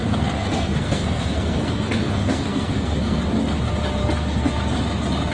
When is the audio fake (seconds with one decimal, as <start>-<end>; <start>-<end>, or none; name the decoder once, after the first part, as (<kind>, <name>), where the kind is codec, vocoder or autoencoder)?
0.0-3.2 (codec, SNAC); 4.0-4.5